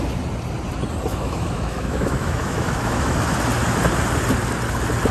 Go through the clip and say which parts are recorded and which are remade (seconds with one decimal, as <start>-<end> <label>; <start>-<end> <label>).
0.0-1.1 recorded; 1.1-3.2 remade; 3.2-5.1 recorded